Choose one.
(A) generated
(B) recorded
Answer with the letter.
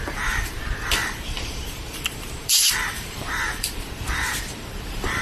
A